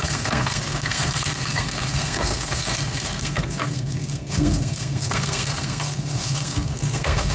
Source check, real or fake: fake